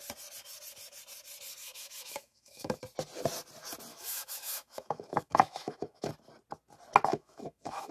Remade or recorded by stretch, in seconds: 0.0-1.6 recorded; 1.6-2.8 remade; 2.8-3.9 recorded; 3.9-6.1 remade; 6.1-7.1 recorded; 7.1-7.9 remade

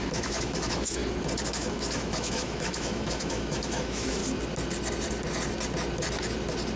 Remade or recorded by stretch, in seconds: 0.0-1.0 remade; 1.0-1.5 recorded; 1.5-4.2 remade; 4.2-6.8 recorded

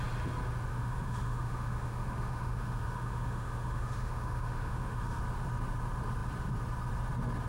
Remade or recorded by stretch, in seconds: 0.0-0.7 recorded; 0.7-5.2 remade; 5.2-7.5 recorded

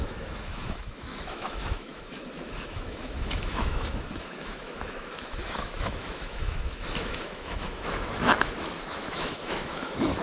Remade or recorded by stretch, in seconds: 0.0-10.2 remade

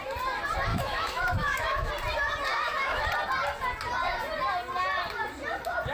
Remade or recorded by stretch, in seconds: 0.0-0.7 recorded; 0.7-1.9 remade; 1.9-2.5 recorded; 2.5-3.1 remade; 3.1-5.9 recorded